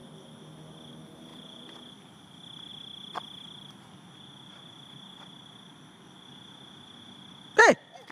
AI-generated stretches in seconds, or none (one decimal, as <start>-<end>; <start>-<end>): 1.3-1.9